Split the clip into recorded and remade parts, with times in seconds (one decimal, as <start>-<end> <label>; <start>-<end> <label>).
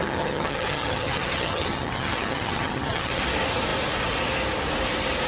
0.0-3.2 remade; 3.2-5.3 recorded